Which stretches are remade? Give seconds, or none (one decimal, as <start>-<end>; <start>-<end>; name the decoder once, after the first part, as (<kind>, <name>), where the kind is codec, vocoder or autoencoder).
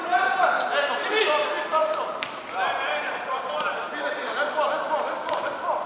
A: 1.2-5.9 (vocoder, BigVGAN v2)